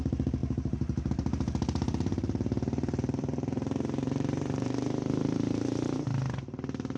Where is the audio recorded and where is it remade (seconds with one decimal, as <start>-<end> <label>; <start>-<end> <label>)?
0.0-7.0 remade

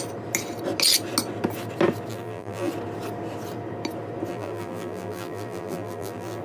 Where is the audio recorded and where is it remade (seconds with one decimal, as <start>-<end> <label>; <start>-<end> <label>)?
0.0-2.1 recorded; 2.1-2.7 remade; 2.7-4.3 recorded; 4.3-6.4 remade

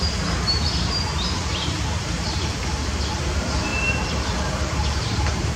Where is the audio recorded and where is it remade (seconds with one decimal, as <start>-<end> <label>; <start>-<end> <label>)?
0.0-3.7 remade; 3.7-4.4 recorded; 4.4-5.6 remade

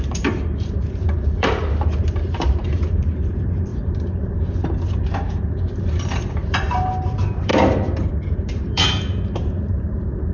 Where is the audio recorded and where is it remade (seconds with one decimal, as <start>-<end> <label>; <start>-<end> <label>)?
0.0-10.3 remade

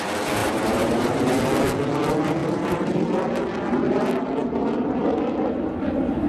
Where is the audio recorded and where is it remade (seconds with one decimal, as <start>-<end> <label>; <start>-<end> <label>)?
0.0-0.4 recorded; 0.4-1.0 remade; 1.0-2.4 recorded; 2.4-2.9 remade; 2.9-6.3 recorded

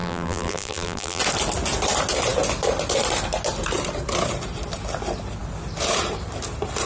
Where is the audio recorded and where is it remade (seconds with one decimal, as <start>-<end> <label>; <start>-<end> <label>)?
0.0-1.2 remade; 1.2-6.9 recorded

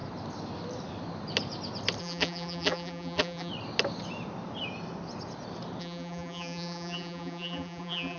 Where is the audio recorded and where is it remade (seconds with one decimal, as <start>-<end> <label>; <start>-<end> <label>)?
0.0-2.0 recorded; 2.0-3.5 remade; 3.5-5.8 recorded; 5.8-8.2 remade